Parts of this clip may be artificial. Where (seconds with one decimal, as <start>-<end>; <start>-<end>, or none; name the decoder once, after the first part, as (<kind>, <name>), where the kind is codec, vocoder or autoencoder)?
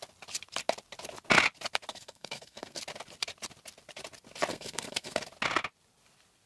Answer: 1.9-2.8 (codec, SNAC); 4.5-5.2